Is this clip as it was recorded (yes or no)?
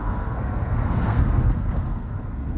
no